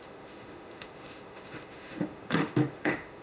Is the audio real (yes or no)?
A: no